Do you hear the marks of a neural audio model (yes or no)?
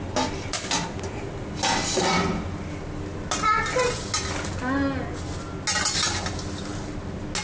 no